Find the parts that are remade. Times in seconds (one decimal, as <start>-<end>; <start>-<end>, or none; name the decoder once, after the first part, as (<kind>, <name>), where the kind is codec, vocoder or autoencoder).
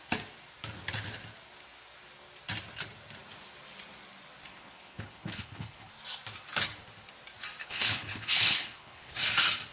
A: 4.5-5.9 (codec, HILCodec); 7.6-9.2